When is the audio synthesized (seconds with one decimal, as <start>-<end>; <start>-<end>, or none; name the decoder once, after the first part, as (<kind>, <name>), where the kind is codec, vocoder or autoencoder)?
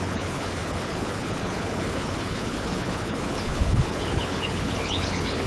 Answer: 0.0-5.5 (codec, HILCodec)